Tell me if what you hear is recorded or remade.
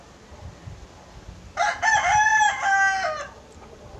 recorded